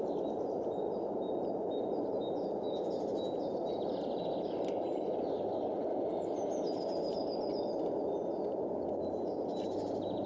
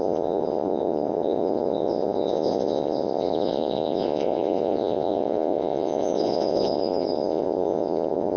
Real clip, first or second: first